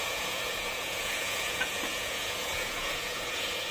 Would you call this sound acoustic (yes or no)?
no